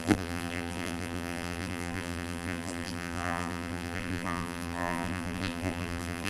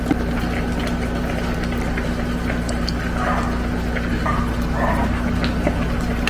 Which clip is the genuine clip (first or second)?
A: second